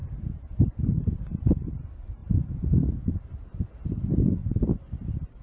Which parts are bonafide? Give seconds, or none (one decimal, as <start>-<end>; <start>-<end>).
0.0-4.4